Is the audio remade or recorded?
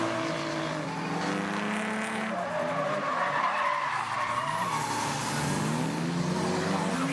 recorded